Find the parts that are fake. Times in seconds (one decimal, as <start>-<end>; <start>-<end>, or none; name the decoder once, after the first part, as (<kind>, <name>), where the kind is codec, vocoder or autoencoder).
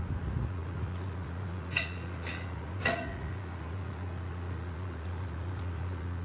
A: 0.0-6.2 (vocoder, Vocos)